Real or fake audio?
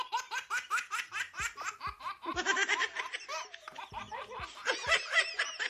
fake